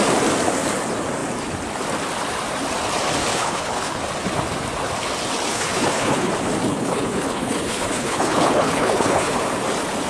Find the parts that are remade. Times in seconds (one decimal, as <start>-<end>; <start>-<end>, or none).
3.3-4.0; 5.5-6.3; 6.7-9.4